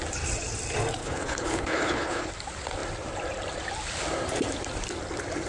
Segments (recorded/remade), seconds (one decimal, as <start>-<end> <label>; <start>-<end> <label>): 0.0-1.0 recorded; 1.0-2.3 remade; 2.3-5.5 recorded